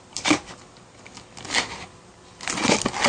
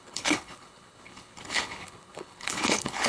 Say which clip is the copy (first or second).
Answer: second